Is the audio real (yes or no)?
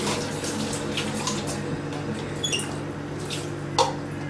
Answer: yes